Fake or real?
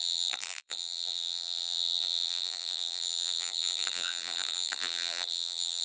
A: fake